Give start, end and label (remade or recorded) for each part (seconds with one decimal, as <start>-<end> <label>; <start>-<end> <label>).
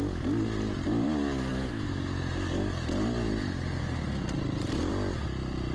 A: 0.0-5.7 recorded